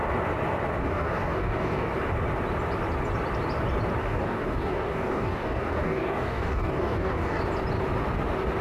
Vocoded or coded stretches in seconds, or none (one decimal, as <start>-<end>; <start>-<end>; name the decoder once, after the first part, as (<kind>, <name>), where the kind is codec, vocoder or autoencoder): 0.8-1.9 (codec, DAC); 4.0-7.4